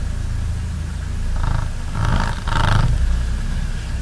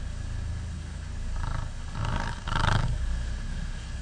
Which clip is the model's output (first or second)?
second